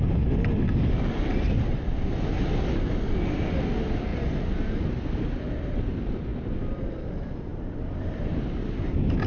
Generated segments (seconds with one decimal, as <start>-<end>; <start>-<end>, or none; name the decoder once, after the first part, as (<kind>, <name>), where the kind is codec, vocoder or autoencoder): 7.5-8.4 (vocoder, BigVGAN v2)